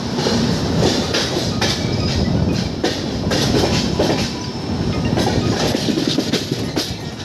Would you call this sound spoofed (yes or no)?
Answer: yes